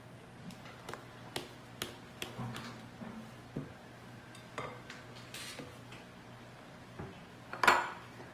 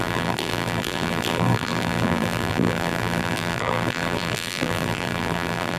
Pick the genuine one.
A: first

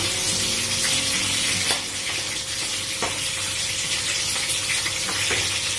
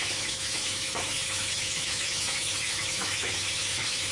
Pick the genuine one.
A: first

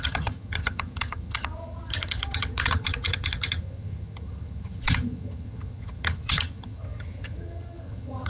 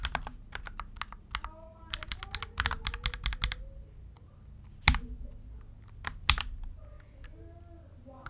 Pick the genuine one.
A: second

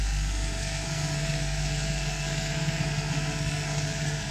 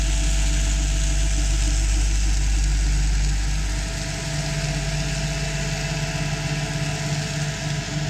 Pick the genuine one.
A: second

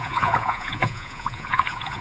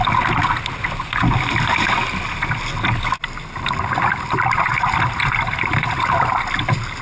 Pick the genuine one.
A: second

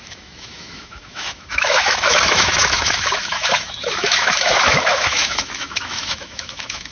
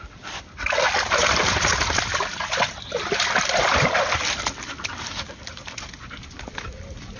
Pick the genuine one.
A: second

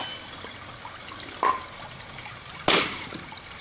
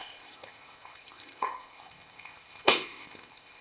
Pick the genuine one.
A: first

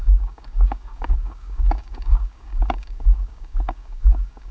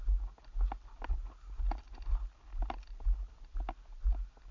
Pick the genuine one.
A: second